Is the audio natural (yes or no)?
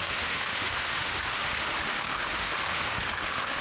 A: no